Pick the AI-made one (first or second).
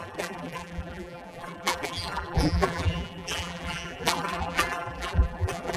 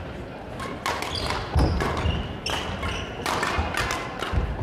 first